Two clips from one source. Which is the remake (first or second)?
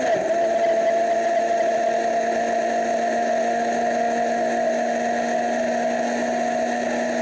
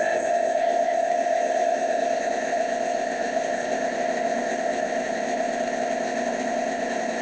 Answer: second